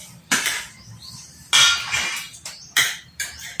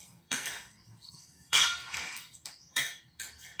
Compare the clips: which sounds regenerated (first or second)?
second